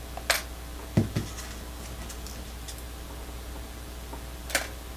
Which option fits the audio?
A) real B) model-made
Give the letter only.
A